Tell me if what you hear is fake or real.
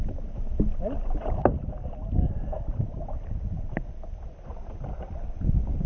real